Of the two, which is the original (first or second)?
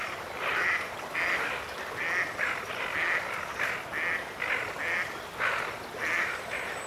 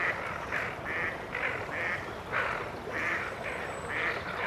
first